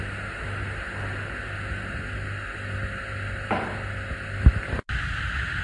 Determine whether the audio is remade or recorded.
recorded